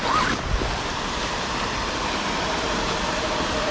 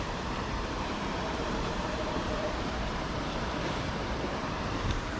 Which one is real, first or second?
first